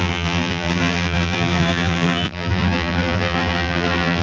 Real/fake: fake